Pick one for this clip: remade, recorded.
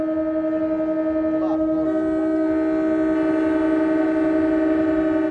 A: recorded